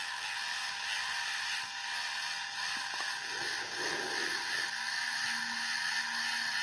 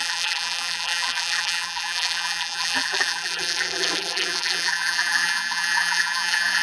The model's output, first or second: second